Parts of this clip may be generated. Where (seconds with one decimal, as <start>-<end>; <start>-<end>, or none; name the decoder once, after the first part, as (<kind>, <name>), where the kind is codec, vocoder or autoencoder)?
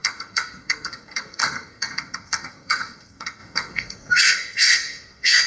0.0-5.5 (codec, SNAC)